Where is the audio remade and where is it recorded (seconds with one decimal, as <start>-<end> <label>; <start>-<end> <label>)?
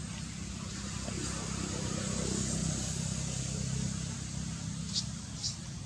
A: 0.0-5.9 recorded